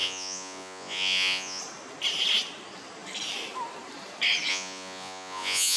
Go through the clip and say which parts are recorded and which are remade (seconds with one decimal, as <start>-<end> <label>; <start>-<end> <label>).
0.0-1.6 remade; 1.6-4.5 recorded; 4.5-5.8 remade